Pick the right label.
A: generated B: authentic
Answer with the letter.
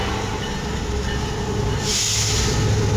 B